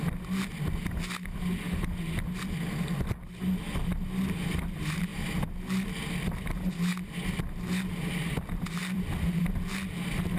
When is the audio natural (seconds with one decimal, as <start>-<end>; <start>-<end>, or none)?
0.0-8.8; 9.4-10.4